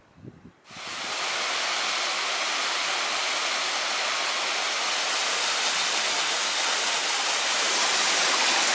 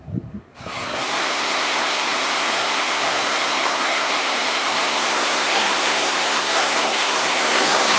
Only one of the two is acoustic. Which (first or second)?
first